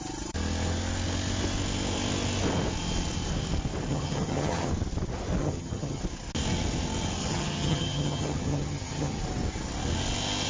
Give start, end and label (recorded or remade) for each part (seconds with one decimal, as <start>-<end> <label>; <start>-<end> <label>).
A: 0.0-3.9 recorded; 3.9-4.7 remade; 4.7-5.4 recorded; 5.4-6.0 remade; 6.0-7.2 recorded; 7.2-9.2 remade; 9.2-10.5 recorded